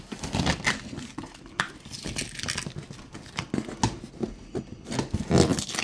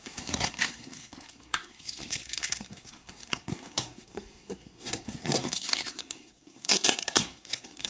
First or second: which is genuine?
first